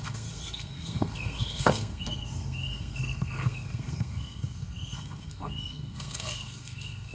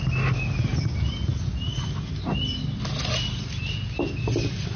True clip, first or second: second